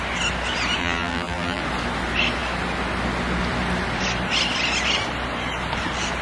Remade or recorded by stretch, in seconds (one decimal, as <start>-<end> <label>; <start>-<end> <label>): 0.0-0.8 recorded; 0.8-1.6 remade; 1.6-6.2 recorded